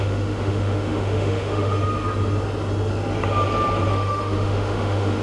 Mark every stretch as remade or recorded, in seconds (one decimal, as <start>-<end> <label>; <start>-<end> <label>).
0.0-1.8 remade; 1.8-3.9 recorded; 3.9-5.2 remade